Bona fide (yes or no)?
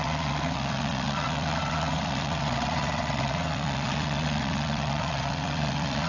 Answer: no